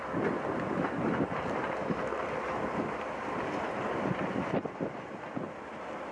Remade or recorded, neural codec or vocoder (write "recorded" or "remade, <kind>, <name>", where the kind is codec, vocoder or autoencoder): recorded